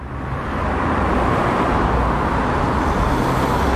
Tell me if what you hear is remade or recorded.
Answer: recorded